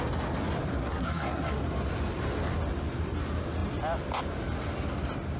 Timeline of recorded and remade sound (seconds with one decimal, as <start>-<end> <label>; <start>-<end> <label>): 0.0-0.8 recorded; 0.8-1.6 remade; 1.6-5.4 recorded